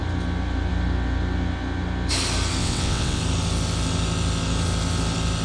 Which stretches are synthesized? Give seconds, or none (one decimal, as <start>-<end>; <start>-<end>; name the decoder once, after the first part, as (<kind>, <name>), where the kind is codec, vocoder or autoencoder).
2.6-3.2 (vocoder, WaveNeXt)